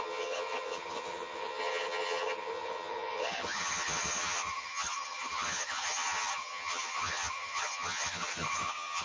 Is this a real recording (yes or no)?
no